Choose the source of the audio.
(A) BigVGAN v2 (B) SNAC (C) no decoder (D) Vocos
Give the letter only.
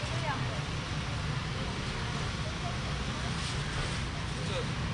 C